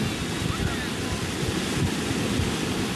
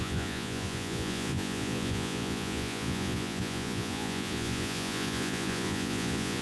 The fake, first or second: second